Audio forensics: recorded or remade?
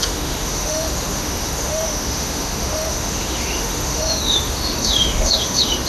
remade